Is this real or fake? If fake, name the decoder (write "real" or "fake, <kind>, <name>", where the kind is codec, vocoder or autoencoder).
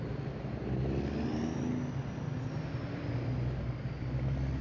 real